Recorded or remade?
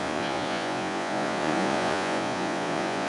remade